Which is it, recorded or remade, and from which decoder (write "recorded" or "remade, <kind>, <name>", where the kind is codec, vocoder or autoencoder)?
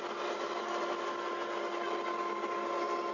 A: recorded